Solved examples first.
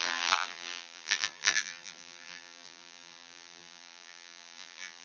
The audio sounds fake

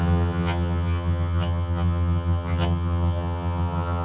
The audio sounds fake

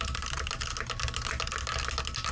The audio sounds real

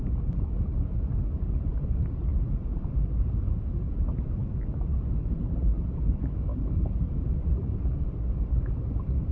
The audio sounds fake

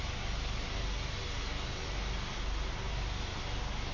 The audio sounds real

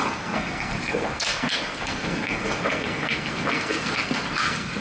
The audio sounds fake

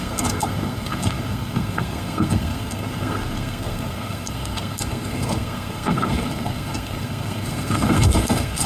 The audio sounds fake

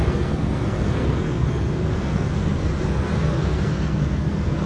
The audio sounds fake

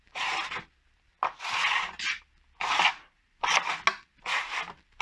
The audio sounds real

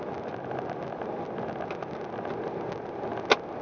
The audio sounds real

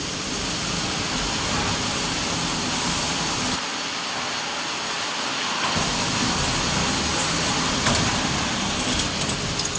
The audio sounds real